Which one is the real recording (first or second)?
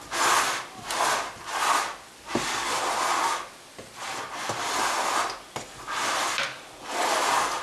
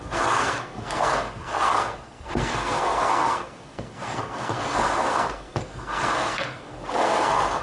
first